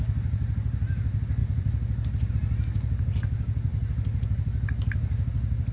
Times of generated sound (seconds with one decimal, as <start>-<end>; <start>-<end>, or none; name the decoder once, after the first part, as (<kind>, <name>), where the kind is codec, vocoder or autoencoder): none